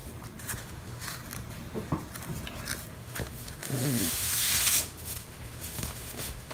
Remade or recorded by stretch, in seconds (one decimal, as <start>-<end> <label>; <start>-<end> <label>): 0.0-0.6 recorded; 0.6-1.2 remade; 1.2-2.9 recorded; 2.9-6.5 remade